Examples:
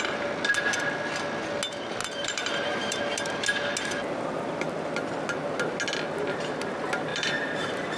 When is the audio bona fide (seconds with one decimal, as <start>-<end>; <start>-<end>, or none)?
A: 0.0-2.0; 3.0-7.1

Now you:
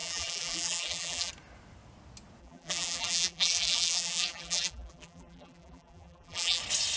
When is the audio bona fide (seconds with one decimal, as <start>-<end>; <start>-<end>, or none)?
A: 1.3-2.4; 6.6-7.0

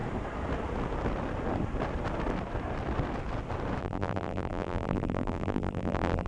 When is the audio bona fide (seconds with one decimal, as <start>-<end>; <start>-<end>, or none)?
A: 0.0-3.8